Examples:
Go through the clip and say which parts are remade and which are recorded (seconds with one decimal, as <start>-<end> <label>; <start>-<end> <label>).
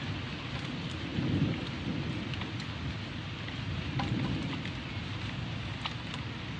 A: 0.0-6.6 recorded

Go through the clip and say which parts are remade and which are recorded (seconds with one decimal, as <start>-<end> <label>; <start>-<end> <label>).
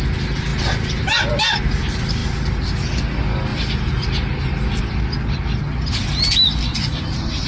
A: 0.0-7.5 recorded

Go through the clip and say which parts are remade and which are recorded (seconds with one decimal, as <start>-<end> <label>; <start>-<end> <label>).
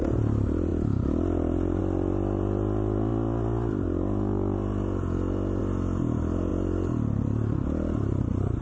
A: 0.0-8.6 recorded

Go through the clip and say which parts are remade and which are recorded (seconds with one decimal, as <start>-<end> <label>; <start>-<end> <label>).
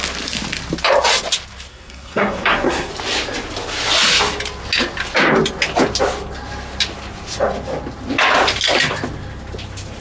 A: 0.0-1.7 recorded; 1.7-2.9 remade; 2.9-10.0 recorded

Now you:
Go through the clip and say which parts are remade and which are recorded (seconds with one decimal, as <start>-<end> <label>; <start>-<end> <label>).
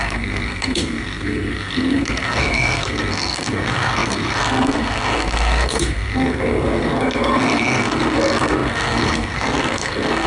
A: 0.0-10.3 remade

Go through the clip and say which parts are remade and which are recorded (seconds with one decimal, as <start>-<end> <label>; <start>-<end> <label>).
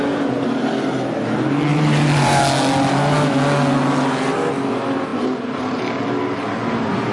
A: 0.0-1.7 recorded; 1.7-2.4 remade; 2.4-5.1 recorded; 5.1-6.0 remade; 6.0-7.1 recorded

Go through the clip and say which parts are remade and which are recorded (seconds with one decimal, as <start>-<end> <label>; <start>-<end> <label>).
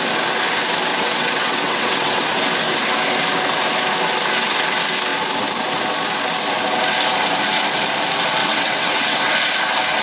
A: 0.0-0.9 recorded; 0.9-2.4 remade; 2.4-8.4 recorded; 8.4-9.2 remade; 9.2-10.0 recorded